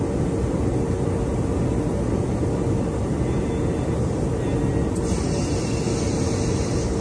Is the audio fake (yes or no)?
no